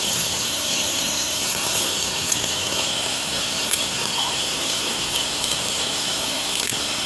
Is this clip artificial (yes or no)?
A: yes